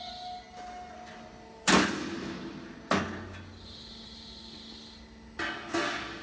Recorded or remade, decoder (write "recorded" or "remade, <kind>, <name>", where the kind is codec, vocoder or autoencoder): recorded